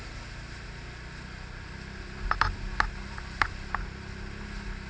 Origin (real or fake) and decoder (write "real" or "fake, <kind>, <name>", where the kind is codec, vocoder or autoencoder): real